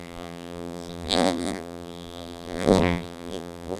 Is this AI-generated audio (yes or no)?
yes